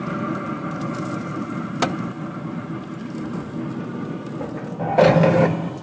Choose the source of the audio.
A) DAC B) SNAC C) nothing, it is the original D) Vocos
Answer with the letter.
C